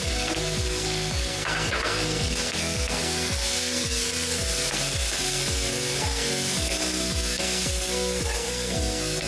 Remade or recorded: remade